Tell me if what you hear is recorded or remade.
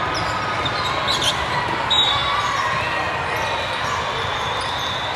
recorded